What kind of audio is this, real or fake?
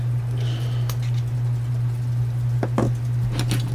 real